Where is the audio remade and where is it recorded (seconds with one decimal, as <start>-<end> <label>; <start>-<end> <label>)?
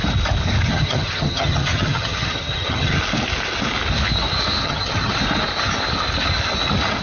0.0-0.7 recorded; 0.7-3.0 remade; 3.0-4.6 recorded; 4.6-5.1 remade; 5.1-7.0 recorded